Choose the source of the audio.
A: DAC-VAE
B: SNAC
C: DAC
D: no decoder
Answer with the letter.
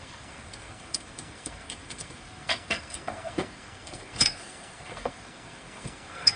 B